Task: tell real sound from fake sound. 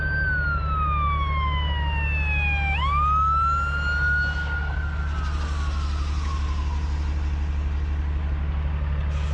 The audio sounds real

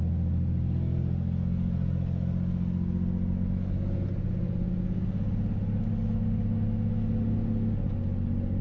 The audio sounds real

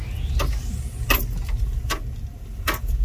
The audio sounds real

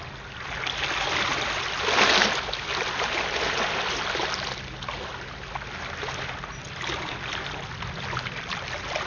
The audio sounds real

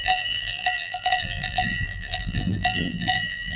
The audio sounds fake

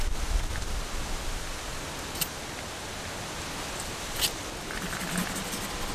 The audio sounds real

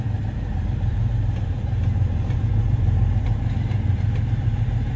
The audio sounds fake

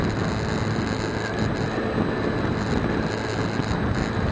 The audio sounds real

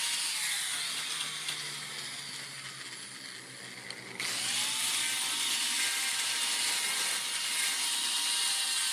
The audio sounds real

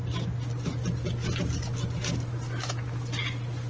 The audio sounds real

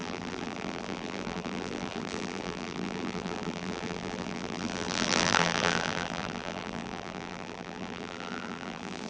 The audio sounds fake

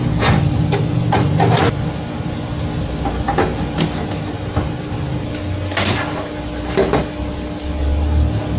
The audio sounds real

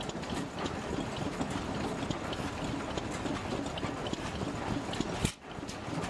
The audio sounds real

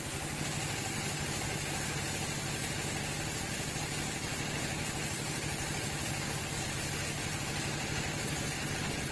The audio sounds real